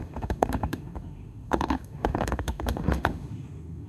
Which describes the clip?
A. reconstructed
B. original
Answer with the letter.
A